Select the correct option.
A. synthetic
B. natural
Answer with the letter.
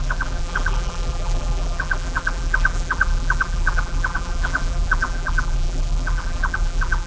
A